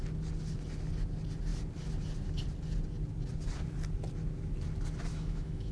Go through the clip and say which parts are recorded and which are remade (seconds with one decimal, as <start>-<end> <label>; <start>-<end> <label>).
0.0-5.1 recorded; 5.1-5.7 remade